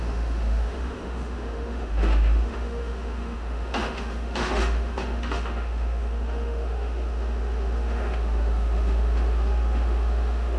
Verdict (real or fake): fake